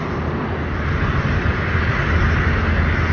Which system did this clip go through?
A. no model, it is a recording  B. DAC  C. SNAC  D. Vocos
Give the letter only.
A